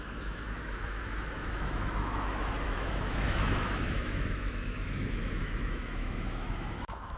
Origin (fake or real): fake